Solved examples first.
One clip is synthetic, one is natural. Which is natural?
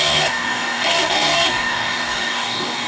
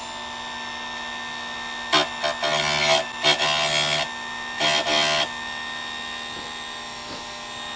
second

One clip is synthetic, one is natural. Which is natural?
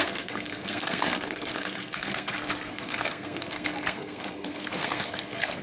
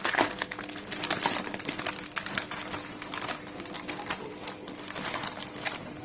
second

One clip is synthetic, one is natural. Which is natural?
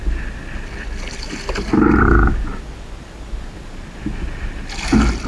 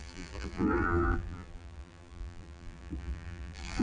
first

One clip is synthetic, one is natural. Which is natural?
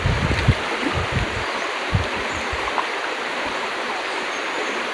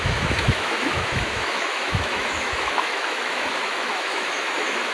first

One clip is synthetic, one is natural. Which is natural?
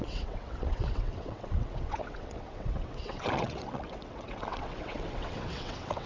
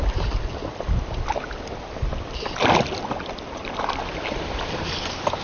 second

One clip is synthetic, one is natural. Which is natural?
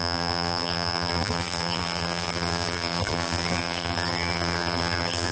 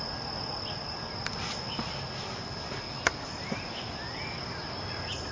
second